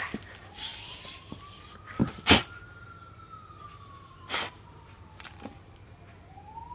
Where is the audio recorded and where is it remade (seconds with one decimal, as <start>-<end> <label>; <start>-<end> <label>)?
0.0-0.7 recorded; 0.7-1.6 remade; 1.6-6.7 recorded

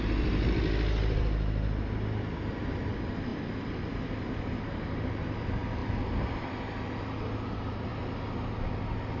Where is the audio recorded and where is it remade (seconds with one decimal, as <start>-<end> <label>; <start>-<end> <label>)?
0.0-3.3 recorded; 3.3-4.3 remade; 4.3-5.8 recorded; 5.8-6.6 remade; 6.6-9.2 recorded

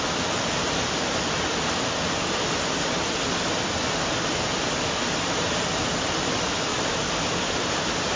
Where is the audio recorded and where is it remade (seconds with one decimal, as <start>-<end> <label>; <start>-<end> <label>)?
0.0-5.0 recorded; 5.0-5.9 remade; 5.9-6.7 recorded; 6.7-7.4 remade; 7.4-8.2 recorded

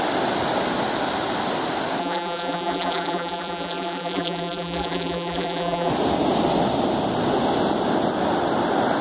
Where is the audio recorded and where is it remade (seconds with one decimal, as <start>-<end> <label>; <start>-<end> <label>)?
0.0-2.0 recorded; 2.0-5.9 remade; 5.9-9.0 recorded

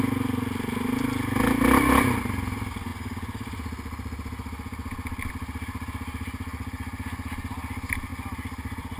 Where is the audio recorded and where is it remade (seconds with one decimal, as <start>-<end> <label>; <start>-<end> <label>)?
0.0-9.0 recorded

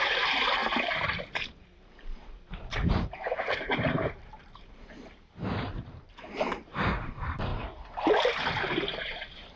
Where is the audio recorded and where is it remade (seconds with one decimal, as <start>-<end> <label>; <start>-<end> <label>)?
0.0-7.5 remade; 7.5-9.0 recorded; 9.0-9.6 remade

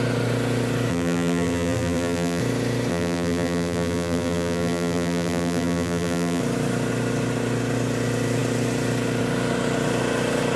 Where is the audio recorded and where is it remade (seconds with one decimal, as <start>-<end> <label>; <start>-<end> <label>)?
0.0-0.9 recorded; 0.9-2.4 remade; 2.4-2.9 recorded; 2.9-6.4 remade; 6.4-10.6 recorded